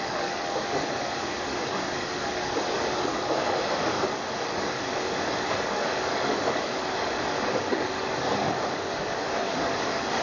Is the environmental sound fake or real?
fake